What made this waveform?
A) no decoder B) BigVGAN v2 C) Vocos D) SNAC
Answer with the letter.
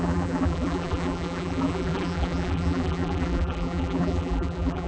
B